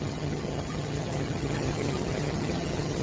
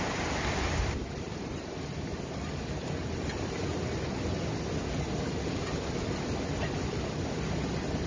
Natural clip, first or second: second